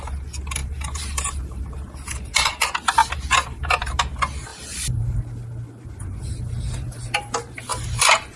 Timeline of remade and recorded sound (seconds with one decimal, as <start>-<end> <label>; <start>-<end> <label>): 0.0-0.6 recorded; 0.6-1.6 remade; 1.6-3.0 recorded; 3.0-4.0 remade; 4.0-4.5 recorded; 4.5-5.2 remade; 5.2-7.7 recorded; 7.7-8.4 remade